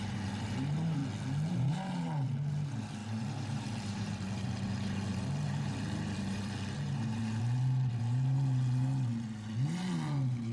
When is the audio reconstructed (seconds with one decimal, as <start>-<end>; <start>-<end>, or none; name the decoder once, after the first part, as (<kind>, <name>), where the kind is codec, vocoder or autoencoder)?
0.0-1.0 (vocoder, BigVGAN v2); 1.5-10.5